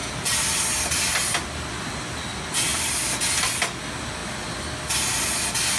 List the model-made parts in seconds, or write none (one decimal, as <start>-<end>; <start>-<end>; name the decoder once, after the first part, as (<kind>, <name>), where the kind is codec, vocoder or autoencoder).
none